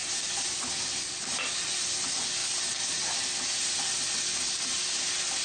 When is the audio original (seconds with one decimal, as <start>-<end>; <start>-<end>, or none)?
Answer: 0.0-5.4